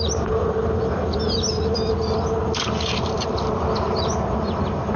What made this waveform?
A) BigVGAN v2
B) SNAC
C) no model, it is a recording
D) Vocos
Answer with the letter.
A